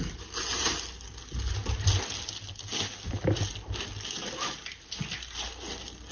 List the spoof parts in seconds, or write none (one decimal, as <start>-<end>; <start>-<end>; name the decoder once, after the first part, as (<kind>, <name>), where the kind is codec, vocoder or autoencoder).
none